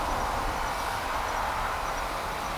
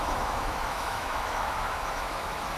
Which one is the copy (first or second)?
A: second